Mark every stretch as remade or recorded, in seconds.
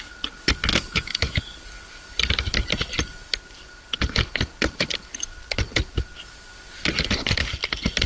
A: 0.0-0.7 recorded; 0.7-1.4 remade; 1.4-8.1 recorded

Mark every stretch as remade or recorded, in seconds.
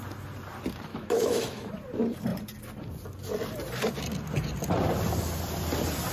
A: 0.0-0.9 recorded; 0.9-1.7 remade; 1.7-6.1 recorded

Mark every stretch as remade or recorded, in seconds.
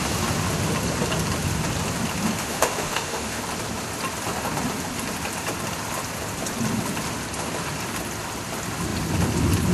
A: 0.0-2.4 recorded; 2.4-3.4 remade; 3.4-9.7 recorded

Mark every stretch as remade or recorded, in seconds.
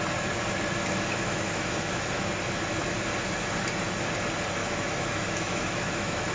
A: 0.0-0.8 recorded; 0.8-2.3 remade; 2.3-4.6 recorded; 4.6-6.3 remade